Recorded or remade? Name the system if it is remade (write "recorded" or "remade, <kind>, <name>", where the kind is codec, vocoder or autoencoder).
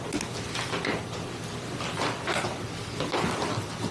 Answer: recorded